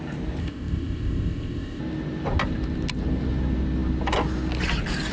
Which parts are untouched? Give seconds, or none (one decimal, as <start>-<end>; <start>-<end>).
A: 0.0-0.4; 1.8-5.1